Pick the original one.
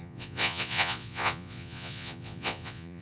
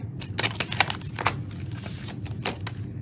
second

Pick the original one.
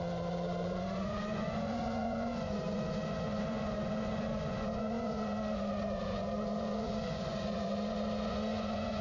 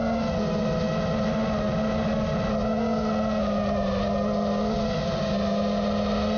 second